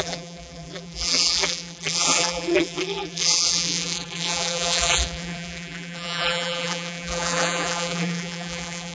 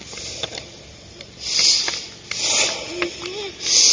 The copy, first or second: first